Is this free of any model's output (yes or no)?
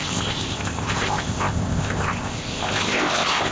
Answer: no